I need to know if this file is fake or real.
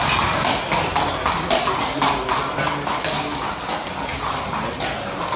real